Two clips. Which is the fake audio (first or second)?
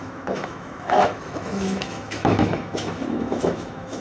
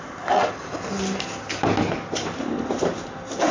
first